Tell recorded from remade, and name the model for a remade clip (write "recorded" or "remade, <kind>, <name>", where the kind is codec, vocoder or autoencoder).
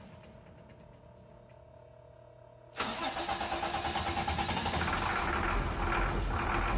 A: recorded